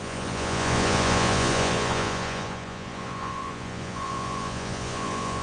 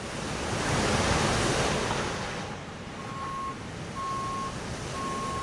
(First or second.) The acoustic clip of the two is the second